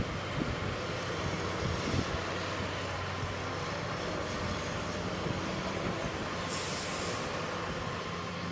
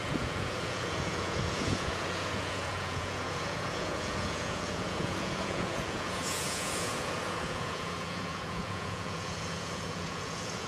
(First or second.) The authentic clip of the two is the first